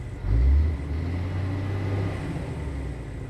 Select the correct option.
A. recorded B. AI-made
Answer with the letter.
A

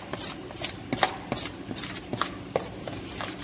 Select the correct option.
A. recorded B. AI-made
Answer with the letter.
A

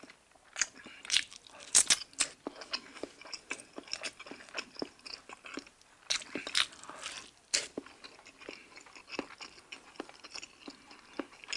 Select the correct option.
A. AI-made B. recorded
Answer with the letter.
B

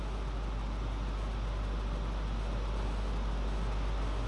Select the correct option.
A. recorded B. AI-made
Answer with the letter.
A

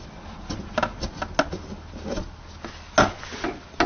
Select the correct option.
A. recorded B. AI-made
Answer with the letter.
A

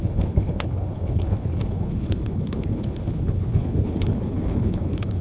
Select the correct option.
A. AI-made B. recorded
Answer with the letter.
A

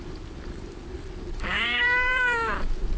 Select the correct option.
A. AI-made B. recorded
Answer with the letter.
A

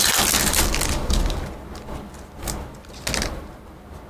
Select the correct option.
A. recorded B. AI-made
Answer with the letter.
A